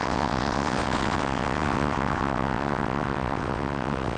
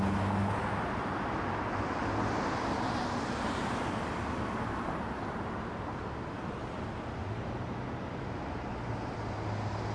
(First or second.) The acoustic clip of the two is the second